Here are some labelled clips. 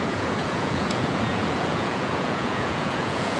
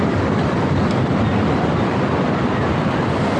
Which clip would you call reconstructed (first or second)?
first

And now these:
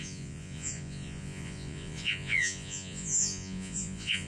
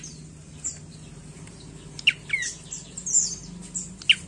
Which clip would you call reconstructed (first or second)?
first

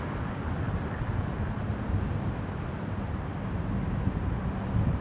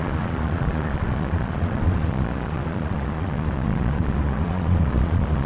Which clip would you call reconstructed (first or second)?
second